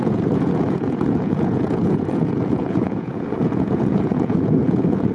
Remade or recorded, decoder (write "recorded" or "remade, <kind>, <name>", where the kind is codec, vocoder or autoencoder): remade, vocoder, Vocos